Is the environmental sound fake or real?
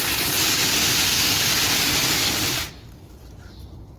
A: real